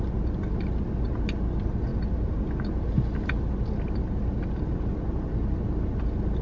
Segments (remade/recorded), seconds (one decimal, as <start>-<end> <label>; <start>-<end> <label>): 0.0-6.4 recorded